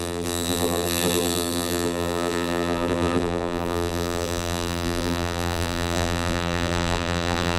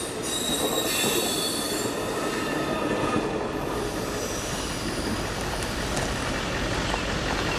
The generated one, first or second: first